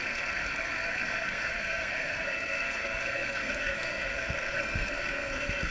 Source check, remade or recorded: remade